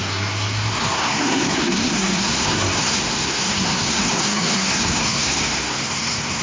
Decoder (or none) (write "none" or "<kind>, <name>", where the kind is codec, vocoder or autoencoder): codec, SNAC